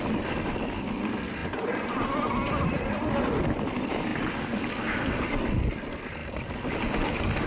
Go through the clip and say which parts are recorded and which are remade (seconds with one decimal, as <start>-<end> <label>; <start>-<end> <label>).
0.0-7.5 recorded